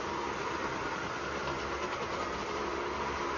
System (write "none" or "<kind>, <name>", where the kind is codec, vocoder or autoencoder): none